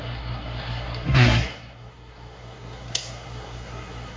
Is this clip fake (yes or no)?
yes